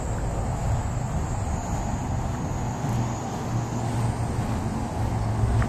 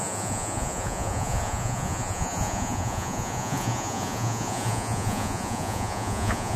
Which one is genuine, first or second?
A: first